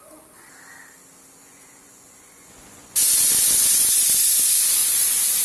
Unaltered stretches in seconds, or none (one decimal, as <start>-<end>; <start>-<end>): 0.0-1.4; 3.3-4.8